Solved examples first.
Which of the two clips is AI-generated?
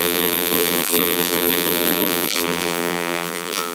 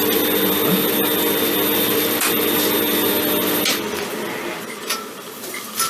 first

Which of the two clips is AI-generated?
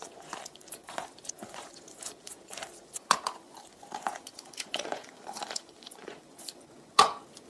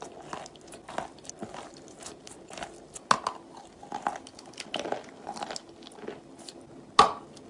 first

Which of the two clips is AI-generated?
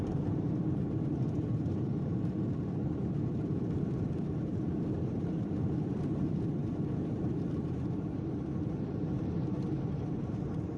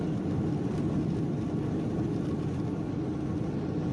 first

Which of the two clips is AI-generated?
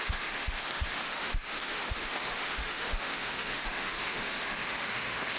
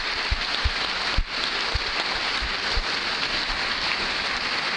first